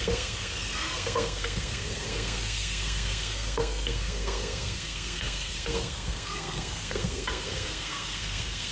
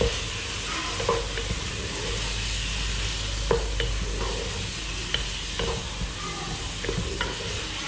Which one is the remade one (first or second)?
first